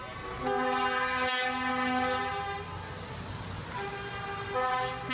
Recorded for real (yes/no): yes